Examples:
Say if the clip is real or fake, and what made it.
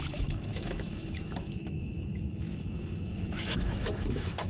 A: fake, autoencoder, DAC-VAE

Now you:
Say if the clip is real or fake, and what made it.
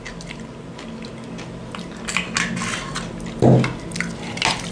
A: real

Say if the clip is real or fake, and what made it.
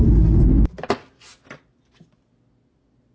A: real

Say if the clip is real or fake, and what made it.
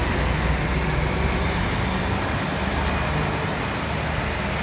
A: real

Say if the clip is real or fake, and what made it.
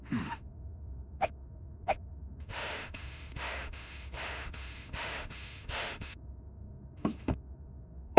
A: fake, autoencoder, DAC-VAE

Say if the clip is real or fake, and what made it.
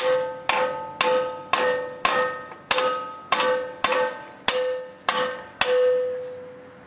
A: real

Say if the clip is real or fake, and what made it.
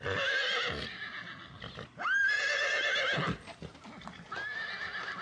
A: real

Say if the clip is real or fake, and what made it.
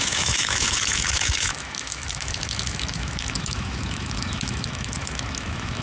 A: fake, autoencoder, DAC-VAE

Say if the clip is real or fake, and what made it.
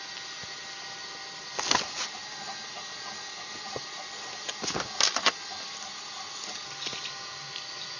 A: real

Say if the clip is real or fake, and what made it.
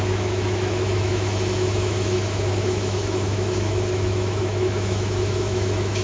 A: fake, autoencoder, DAC-VAE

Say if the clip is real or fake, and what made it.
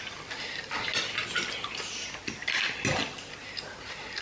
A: real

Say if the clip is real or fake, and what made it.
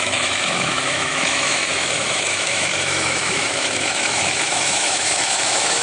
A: fake, autoencoder, DAC-VAE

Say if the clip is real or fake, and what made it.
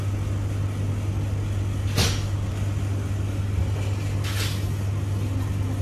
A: real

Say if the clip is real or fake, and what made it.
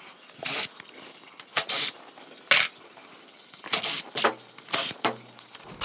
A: real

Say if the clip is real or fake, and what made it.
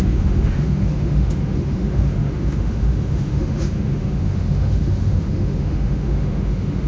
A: fake, autoencoder, DAC-VAE